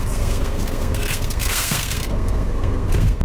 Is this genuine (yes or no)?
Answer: no